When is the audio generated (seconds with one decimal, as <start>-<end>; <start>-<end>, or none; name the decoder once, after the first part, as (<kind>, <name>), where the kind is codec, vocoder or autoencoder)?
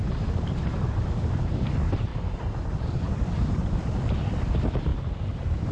0.0-5.7 (vocoder, BigVGAN v2)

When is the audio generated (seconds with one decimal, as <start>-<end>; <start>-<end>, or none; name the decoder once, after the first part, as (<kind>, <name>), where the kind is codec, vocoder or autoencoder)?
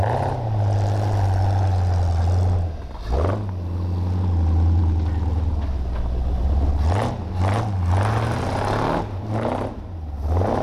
none